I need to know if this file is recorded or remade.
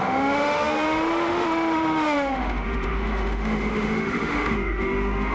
remade